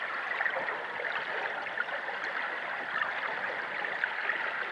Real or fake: real